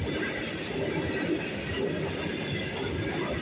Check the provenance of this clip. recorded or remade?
recorded